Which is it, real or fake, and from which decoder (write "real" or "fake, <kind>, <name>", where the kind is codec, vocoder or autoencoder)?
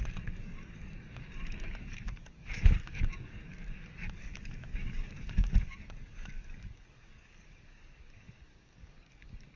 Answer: fake, codec, DAC